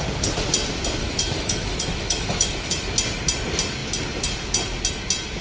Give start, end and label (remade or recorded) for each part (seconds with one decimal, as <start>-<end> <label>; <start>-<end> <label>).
0.0-1.0 recorded; 1.0-2.9 remade; 2.9-5.4 recorded